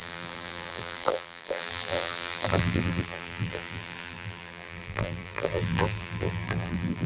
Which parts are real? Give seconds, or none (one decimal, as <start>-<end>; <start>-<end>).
none